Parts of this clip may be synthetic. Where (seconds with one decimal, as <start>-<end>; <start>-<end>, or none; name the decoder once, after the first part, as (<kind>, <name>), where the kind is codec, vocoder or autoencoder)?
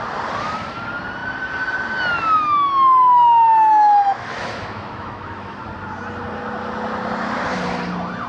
3.7-5.6 (autoencoder, DAC-VAE)